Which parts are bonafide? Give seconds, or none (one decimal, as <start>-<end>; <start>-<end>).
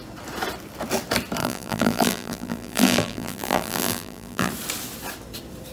0.0-1.4; 4.5-5.7